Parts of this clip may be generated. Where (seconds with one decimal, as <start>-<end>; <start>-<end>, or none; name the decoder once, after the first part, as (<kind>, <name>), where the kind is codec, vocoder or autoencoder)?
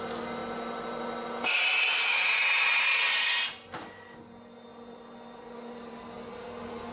none